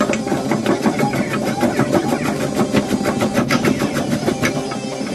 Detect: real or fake real